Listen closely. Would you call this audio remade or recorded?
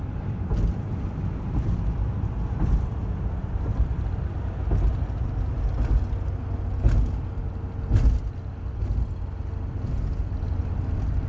recorded